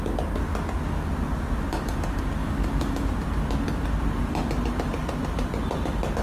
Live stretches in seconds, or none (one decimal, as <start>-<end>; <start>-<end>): 0.0-2.4; 3.1-6.2